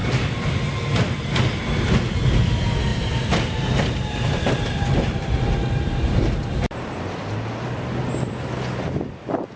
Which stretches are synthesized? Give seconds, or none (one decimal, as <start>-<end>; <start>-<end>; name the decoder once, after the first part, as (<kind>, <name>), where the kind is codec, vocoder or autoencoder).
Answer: 2.9-6.9 (vocoder, BigVGAN v2)